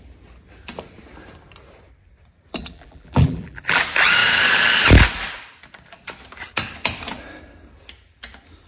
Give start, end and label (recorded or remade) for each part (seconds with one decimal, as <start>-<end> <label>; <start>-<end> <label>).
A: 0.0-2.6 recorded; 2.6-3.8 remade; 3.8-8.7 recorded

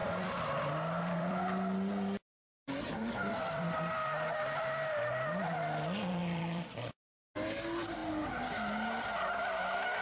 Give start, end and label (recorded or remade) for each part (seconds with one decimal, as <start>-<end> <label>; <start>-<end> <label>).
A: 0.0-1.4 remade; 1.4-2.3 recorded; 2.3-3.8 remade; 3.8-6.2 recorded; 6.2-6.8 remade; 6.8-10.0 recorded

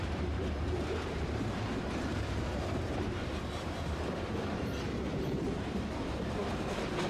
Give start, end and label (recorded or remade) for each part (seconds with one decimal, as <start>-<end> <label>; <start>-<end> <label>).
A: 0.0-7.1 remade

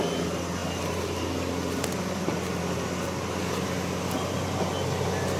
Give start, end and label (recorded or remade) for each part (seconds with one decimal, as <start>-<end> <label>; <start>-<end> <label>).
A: 0.0-5.4 recorded

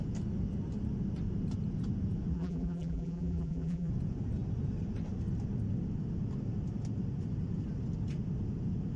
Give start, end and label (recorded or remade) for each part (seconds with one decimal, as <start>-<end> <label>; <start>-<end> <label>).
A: 0.0-2.3 recorded; 2.3-3.9 remade; 3.9-9.0 recorded